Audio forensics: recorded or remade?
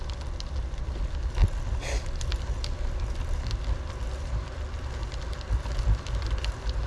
recorded